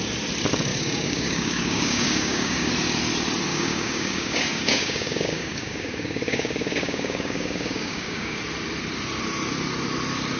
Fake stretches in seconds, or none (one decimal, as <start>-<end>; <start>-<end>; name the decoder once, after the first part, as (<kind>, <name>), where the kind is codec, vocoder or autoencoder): 0.7-2.7 (codec, DAC); 3.5-8.4